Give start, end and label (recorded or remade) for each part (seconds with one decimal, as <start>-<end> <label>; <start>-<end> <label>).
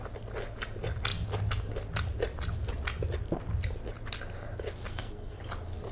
0.0-4.9 recorded; 4.9-5.4 remade; 5.4-5.9 recorded